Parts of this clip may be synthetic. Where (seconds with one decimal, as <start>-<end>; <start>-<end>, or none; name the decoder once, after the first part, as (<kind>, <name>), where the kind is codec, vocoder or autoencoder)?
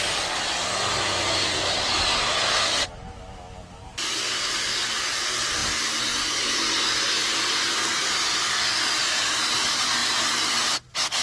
none